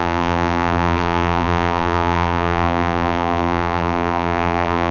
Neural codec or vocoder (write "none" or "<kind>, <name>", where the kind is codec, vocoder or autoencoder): vocoder, BigVGAN v2